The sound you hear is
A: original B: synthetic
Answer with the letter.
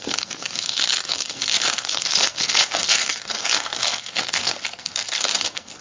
B